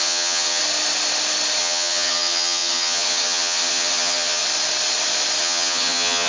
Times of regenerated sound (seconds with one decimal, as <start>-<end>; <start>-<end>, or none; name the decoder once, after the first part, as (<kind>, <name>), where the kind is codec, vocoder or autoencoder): 0.0-0.6 (vocoder, HiFi-GAN); 1.6-4.4; 5.4-6.3